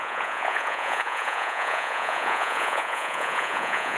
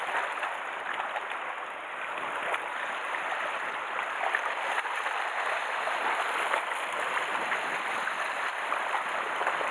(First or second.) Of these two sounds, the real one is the second